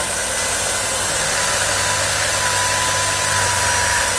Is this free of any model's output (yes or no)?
yes